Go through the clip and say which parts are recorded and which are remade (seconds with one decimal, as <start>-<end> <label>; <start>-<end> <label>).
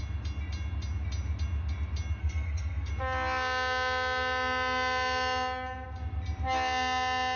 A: 0.0-2.2 recorded; 2.2-2.9 remade; 2.9-7.4 recorded